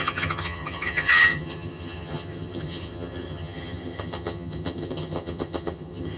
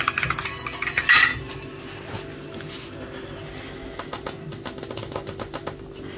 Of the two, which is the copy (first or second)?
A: first